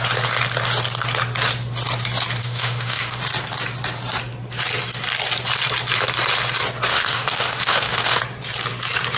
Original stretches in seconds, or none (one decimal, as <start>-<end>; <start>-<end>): 0.0-2.4; 3.2-6.9; 8.2-9.2